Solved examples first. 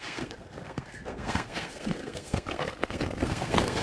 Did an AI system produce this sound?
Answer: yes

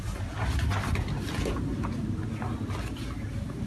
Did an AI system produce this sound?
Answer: no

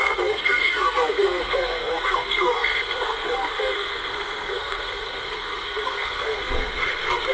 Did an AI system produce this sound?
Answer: yes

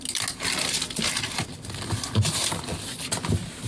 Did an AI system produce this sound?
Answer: no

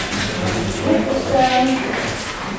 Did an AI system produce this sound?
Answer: no